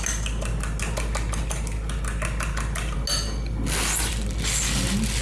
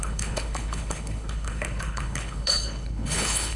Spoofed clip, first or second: second